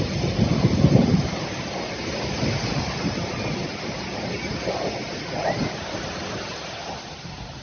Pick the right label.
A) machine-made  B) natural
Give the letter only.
B